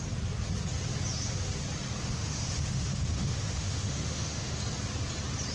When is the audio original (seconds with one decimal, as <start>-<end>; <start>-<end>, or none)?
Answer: 0.0-2.0; 4.6-5.5